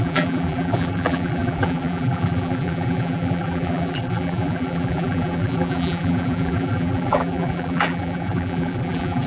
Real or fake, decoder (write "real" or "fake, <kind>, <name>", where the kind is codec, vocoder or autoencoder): fake, vocoder, BigVGAN v2